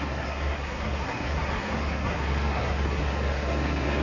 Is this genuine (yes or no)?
no